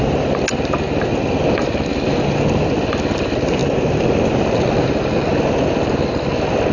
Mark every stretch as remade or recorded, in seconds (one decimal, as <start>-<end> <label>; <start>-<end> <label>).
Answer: 0.0-6.7 recorded